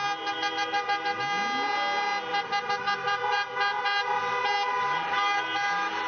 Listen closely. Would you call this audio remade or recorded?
recorded